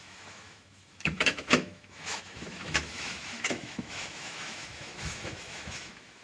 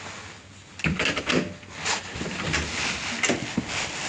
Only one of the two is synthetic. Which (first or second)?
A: first